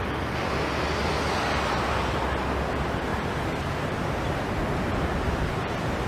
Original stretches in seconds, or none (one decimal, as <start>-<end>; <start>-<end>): 0.0-6.1